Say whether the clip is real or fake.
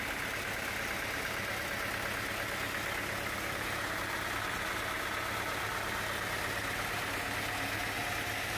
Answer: real